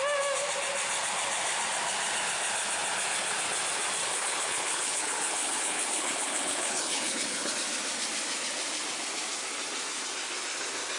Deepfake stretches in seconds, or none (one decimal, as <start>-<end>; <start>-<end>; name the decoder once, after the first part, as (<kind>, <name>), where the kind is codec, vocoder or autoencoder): 4.0-7.5 (codec, HILCodec)